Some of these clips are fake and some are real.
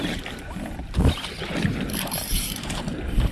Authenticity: fake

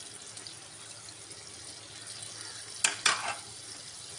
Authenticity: real